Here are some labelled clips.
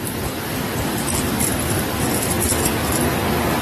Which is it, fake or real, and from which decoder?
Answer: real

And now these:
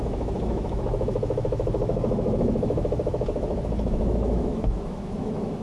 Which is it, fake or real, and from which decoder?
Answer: fake, autoencoder, DAC-VAE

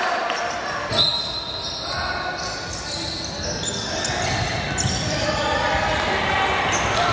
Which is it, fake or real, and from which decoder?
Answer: real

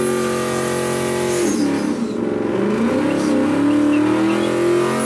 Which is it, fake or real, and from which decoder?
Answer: real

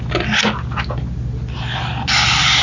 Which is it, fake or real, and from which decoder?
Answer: real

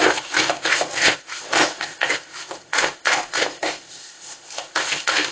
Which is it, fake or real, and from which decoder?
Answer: fake, codec, ZipCodec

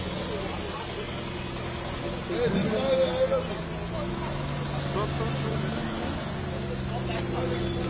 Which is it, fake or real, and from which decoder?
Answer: real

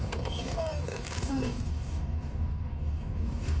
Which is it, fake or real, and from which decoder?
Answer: fake, codec, DAC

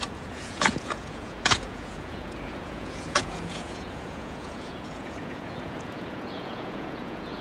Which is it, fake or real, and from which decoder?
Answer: fake, vocoder, Vocos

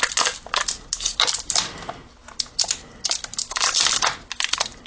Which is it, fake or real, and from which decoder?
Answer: real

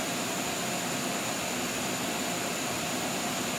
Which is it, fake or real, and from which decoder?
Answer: real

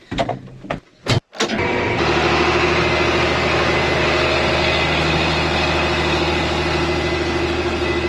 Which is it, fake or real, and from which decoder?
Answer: real